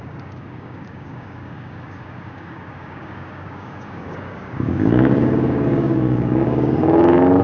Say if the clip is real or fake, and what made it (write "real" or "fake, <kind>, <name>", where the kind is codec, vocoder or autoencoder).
fake, codec, DAC